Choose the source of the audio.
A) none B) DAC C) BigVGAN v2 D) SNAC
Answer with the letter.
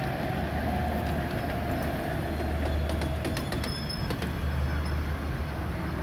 A